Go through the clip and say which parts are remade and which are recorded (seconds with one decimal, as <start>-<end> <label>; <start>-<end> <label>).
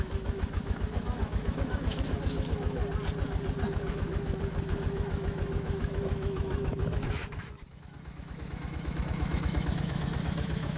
0.0-2.8 remade; 2.8-3.9 recorded; 3.9-10.8 remade